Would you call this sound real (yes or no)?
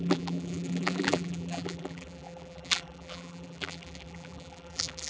no